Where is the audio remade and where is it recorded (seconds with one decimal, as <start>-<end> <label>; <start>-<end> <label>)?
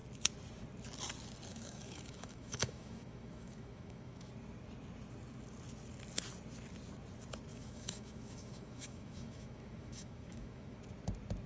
0.0-1.5 recorded; 1.5-4.3 remade; 4.3-7.5 recorded; 7.5-10.8 remade; 10.8-11.5 recorded